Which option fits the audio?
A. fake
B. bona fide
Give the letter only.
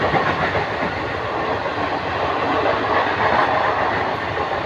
B